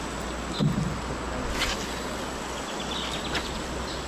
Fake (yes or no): no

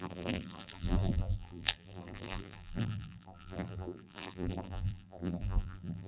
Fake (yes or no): yes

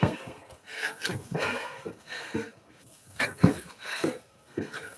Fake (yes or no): yes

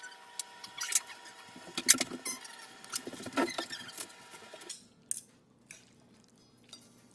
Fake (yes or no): no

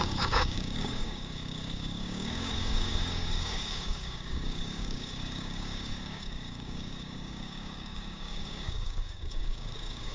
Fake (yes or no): yes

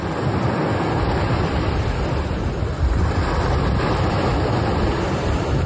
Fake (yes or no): no